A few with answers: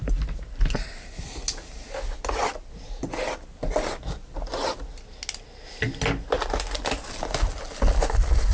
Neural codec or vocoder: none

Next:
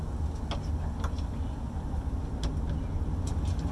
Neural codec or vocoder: none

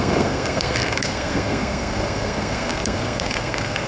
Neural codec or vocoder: codec, SNAC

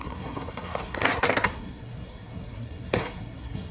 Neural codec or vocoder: codec, SNAC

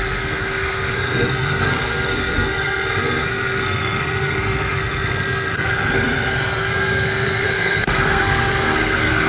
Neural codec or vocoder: codec, SNAC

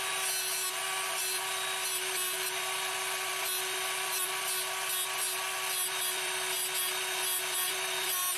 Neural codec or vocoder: none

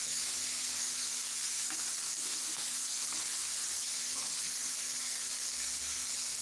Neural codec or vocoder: codec, SNAC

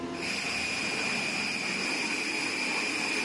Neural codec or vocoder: none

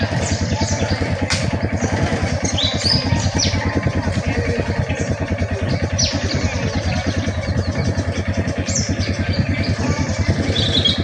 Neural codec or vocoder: none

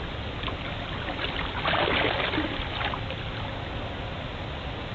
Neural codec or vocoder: none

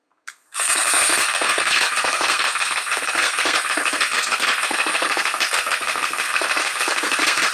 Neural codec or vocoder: codec, SNAC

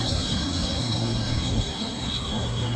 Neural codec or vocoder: codec, SNAC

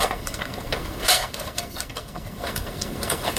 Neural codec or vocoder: codec, SNAC